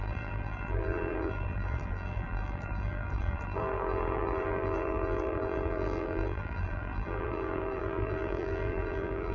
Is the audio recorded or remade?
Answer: remade